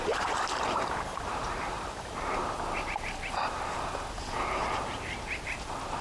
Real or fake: fake